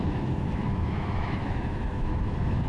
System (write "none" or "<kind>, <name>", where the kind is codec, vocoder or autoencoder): autoencoder, DAC-VAE